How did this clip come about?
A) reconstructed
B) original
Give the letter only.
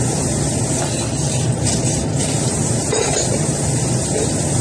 A